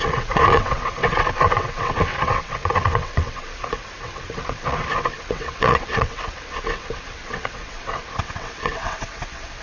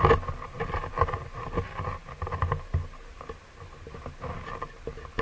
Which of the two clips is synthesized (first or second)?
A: first